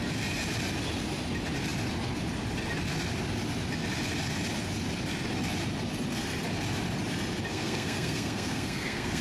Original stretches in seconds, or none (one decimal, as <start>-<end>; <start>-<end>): 0.0-7.5